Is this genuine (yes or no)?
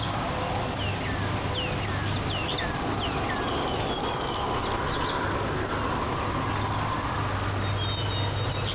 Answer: yes